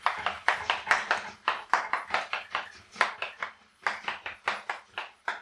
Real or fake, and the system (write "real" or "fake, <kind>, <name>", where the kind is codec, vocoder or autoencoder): real